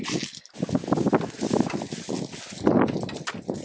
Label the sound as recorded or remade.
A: recorded